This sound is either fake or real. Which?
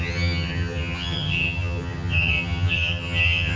fake